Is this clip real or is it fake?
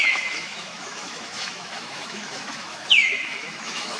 fake